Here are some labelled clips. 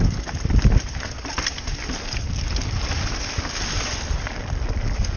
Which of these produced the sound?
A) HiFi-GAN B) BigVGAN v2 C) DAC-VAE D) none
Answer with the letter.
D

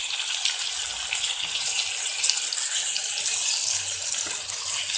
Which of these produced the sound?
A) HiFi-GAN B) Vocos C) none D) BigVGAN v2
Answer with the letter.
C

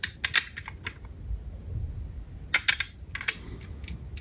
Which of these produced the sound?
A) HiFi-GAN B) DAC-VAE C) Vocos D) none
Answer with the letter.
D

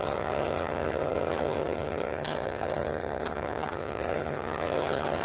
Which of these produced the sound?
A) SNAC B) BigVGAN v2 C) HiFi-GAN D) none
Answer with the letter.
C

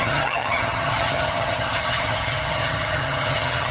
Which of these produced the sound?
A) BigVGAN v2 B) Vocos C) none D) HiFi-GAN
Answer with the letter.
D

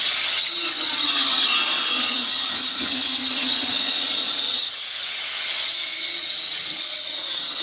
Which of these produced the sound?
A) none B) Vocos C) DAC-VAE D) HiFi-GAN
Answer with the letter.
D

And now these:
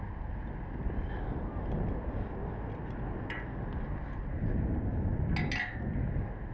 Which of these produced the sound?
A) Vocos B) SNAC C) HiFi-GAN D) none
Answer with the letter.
D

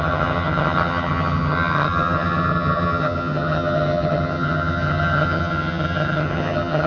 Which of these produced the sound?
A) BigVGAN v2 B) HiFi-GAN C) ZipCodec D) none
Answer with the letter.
B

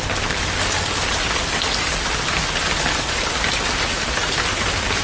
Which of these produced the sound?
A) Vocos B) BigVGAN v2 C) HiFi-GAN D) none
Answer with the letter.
D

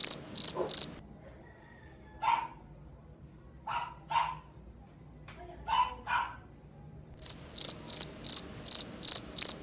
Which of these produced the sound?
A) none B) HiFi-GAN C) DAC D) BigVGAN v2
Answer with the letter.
A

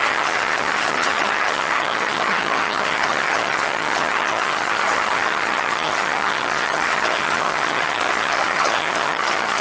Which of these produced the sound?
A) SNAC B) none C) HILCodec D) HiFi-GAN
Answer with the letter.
D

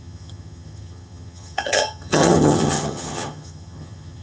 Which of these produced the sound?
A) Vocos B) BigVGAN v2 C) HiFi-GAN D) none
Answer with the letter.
C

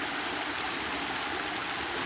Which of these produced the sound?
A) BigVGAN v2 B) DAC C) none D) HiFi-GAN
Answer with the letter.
C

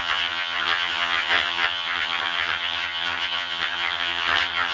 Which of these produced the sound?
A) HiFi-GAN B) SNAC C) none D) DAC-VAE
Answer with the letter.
A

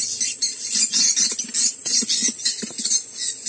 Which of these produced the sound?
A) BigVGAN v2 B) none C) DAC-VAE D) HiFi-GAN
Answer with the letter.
B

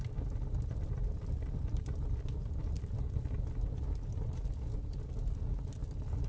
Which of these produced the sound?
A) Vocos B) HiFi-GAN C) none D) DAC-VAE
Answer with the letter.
C